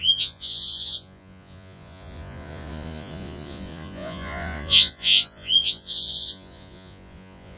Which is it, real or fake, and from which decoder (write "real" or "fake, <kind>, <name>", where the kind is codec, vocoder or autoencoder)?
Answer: fake, vocoder, Vocos